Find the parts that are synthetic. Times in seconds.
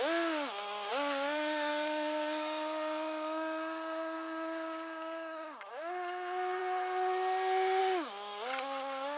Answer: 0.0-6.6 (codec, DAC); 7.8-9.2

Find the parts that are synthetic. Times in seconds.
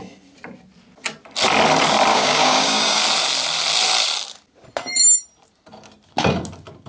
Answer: 2.1-3.0 (codec, DAC)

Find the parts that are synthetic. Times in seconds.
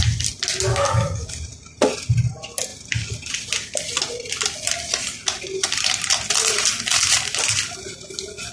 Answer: 0.7-1.3 (codec, DAC)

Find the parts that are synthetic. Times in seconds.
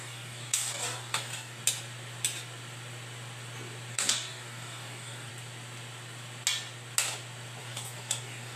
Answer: 0.0-1.6 (codec, DAC); 3.9-5.3; 7.6-8.6